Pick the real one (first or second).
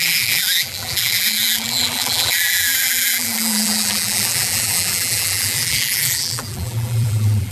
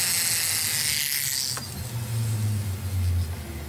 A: second